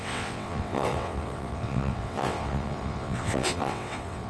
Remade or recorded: remade